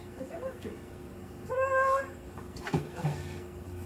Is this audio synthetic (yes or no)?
yes